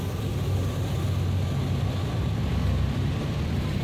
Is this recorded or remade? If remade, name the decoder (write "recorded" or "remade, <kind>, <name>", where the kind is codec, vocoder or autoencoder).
recorded